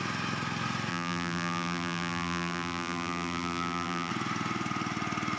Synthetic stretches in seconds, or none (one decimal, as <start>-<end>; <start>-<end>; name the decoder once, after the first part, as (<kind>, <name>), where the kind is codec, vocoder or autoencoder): 0.9-4.1 (vocoder, BigVGAN v2)